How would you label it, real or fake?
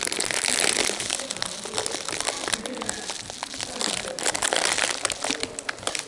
real